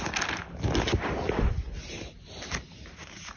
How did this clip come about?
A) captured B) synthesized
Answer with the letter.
A